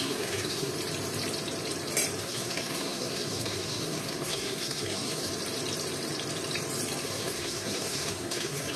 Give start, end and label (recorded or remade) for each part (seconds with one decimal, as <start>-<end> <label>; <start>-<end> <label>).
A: 0.0-0.7 remade; 0.7-2.2 recorded; 2.2-5.3 remade; 5.3-7.0 recorded; 7.0-8.8 remade